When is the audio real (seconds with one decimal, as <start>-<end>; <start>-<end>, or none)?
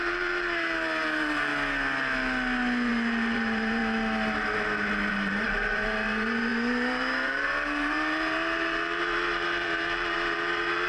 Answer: 1.5-2.9; 3.8-5.1